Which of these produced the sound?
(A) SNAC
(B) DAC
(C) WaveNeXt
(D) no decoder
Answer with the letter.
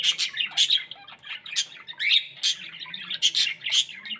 D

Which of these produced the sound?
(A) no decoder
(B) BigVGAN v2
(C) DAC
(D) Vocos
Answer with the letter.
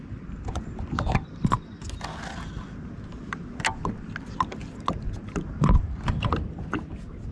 A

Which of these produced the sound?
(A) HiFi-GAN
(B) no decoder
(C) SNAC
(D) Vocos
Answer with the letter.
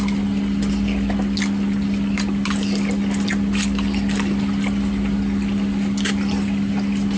B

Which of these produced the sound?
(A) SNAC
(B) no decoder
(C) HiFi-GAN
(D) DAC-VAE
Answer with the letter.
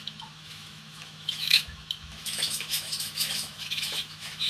D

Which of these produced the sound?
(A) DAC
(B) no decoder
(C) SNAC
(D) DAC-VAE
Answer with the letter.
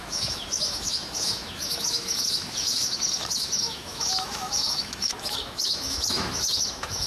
D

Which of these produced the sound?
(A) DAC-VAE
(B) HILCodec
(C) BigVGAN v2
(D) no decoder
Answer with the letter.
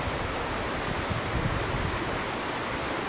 D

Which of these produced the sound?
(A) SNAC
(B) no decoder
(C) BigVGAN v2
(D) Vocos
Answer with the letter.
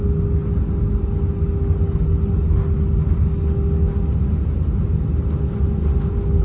B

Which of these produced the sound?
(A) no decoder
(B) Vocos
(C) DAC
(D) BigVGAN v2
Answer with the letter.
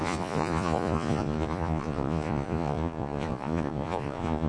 B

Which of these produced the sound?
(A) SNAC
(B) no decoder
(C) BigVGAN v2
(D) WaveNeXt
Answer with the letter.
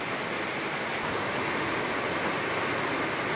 B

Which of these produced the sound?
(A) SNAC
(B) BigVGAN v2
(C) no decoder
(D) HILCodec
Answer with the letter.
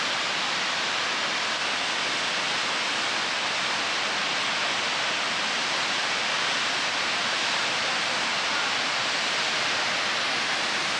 C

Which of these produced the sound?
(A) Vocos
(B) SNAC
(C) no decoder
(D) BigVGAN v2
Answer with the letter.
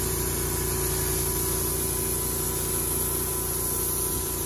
C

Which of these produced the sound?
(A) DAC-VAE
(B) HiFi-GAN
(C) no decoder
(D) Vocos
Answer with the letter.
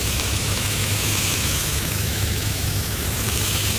A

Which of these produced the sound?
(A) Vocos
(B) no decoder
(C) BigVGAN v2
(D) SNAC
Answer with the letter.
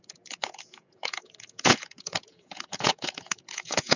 A